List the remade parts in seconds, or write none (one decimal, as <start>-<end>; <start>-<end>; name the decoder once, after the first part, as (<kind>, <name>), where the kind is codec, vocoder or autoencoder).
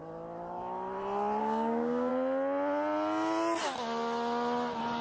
1.4-2.1 (codec, DAC)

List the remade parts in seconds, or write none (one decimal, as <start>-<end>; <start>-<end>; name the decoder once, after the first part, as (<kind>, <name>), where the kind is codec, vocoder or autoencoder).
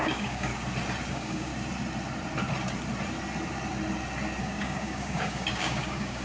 0.0-0.5 (codec, DAC); 1.1-1.5; 4.4-6.2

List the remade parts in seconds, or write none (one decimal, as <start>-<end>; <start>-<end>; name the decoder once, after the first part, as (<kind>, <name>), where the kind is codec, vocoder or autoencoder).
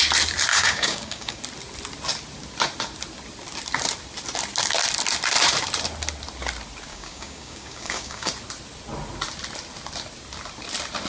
0.5-1.4 (codec, DAC); 6.9-8.3